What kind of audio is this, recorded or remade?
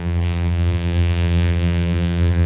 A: remade